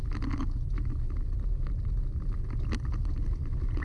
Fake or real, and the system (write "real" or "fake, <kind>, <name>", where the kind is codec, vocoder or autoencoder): real